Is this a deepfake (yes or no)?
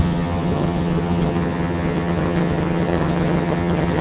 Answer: yes